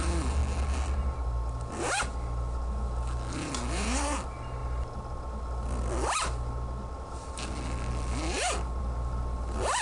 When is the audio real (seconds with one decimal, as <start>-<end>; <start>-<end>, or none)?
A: 0.0-9.8